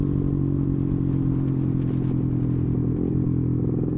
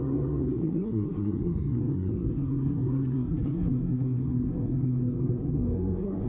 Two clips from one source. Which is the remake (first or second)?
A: second